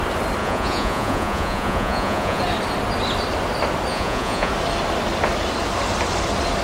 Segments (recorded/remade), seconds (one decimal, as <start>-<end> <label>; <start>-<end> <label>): 0.0-0.4 recorded; 0.4-2.4 remade; 2.4-3.9 recorded; 3.9-4.5 remade; 4.5-6.6 recorded